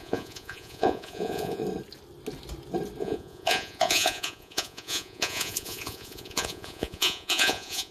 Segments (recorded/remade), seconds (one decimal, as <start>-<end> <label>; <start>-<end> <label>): 0.0-1.6 remade; 1.6-3.0 recorded; 3.0-7.9 remade